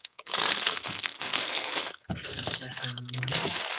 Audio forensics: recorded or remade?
remade